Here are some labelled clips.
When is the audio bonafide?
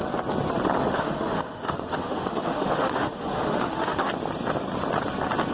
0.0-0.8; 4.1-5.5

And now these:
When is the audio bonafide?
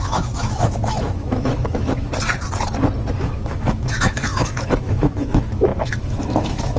2.1-3.1